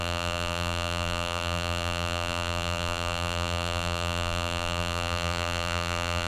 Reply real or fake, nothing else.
fake